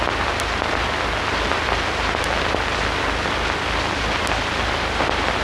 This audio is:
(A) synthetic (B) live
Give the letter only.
B